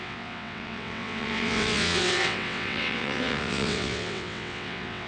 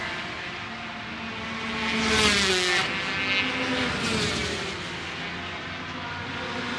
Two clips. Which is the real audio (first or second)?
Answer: second